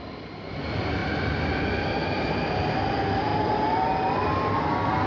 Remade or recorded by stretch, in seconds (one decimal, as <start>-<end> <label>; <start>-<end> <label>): 0.0-5.1 recorded